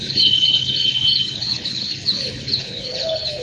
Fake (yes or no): yes